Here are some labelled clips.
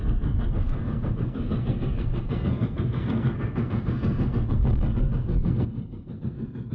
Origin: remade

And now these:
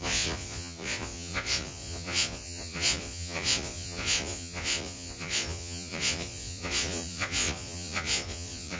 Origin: remade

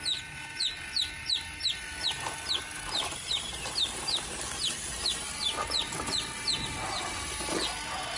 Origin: recorded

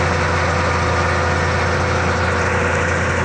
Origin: recorded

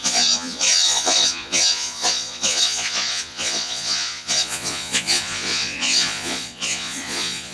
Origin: remade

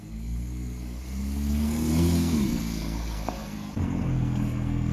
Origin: remade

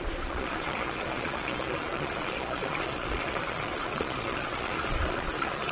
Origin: remade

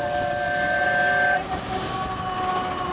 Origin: recorded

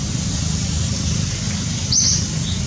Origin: recorded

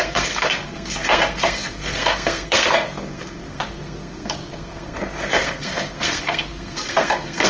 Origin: remade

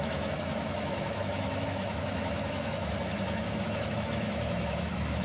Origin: remade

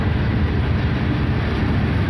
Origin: recorded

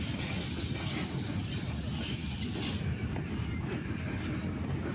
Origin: recorded